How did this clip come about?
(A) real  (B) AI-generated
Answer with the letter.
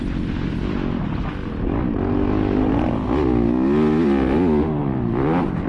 A